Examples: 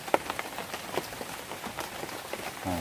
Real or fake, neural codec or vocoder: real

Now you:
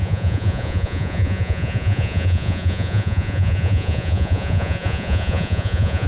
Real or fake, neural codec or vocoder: fake, vocoder, Vocos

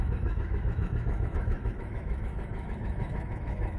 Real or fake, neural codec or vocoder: fake, autoencoder, DAC-VAE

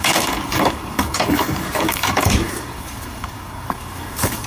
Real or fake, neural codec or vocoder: fake, codec, DAC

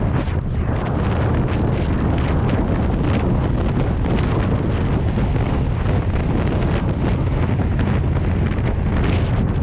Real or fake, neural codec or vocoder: real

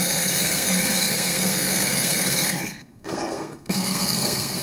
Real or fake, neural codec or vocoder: fake, codec, SNAC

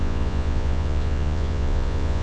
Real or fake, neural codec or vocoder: fake, vocoder, Vocos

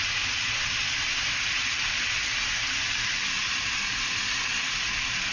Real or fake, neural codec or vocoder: real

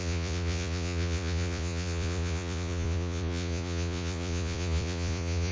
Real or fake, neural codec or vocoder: fake, vocoder, Vocos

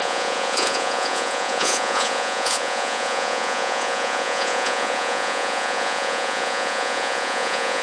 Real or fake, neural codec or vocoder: fake, vocoder, Vocos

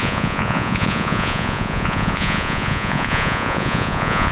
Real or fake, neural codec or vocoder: fake, vocoder, Vocos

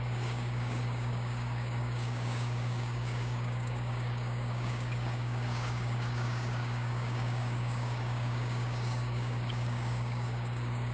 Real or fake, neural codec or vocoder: fake, codec, DAC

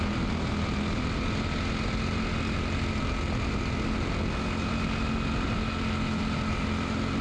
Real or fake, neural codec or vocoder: real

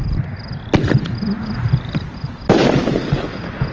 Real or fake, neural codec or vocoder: real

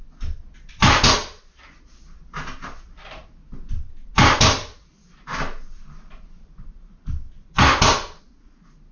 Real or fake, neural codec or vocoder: real